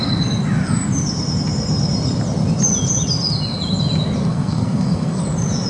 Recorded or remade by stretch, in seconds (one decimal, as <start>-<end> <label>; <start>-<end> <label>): 0.0-4.3 recorded; 4.3-5.2 remade; 5.2-5.7 recorded